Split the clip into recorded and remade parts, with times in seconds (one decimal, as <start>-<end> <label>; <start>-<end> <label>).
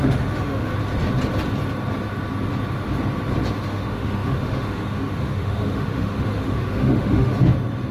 0.0-0.7 remade; 0.7-3.7 recorded; 3.7-7.3 remade; 7.3-7.9 recorded